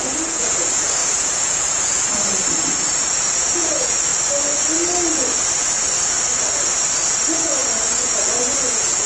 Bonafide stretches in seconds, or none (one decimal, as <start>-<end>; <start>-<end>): 4.1-7.3